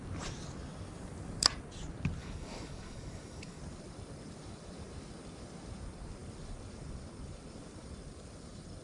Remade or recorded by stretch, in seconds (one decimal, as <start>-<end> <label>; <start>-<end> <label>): 0.0-2.2 recorded; 2.2-3.6 remade; 3.6-8.8 recorded